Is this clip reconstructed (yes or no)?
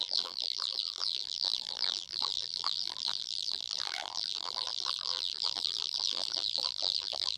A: yes